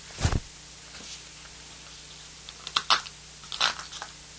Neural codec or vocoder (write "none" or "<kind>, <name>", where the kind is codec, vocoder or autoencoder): none